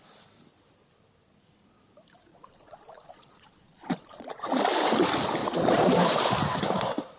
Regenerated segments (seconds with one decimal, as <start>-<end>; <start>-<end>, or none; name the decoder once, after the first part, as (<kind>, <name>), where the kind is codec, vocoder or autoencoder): 2.3-4.6 (vocoder, Vocos); 5.4-6.0